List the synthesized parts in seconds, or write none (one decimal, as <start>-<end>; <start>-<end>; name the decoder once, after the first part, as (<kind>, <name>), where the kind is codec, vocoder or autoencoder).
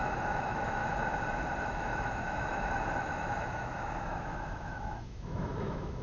0.0-0.8 (autoencoder, DAC-VAE); 1.6-6.0